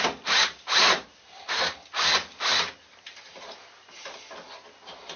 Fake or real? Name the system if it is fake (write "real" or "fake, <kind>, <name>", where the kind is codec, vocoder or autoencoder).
real